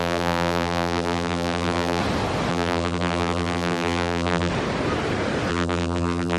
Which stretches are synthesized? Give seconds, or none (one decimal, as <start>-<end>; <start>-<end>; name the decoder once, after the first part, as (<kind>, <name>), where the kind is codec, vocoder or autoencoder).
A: 0.0-2.0 (vocoder, BigVGAN v2); 2.5-4.5; 5.5-6.4